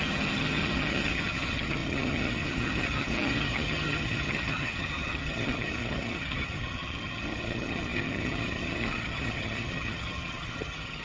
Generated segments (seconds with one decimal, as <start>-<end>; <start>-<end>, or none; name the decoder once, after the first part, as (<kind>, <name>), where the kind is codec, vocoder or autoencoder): 0.0-11.0 (vocoder, HiFi-GAN)